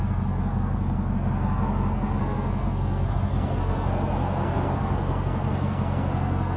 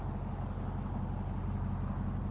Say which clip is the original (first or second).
second